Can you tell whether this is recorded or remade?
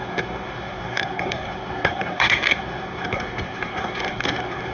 remade